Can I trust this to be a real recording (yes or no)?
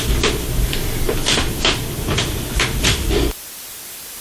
no